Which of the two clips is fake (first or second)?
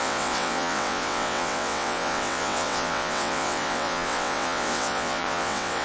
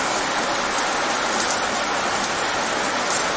first